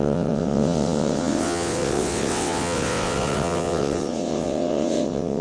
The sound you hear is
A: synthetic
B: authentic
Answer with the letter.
A